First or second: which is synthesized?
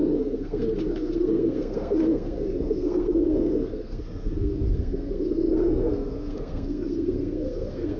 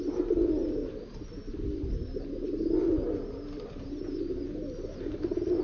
first